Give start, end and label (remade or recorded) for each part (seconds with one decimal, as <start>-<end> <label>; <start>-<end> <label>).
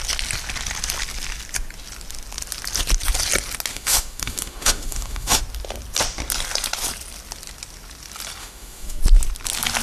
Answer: 0.0-3.7 recorded; 3.7-5.4 remade; 5.4-8.4 recorded; 8.4-9.0 remade; 9.0-9.8 recorded